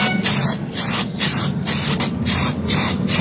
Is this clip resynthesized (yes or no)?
no